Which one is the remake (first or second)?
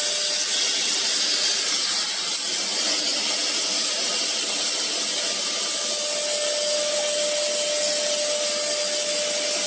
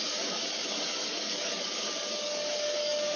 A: second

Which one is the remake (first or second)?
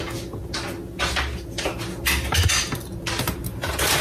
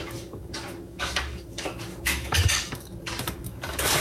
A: second